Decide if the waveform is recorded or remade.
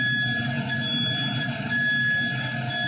recorded